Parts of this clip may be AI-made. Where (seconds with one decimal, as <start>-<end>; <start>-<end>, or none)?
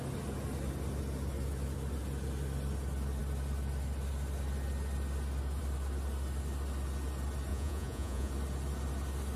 7.5-8.3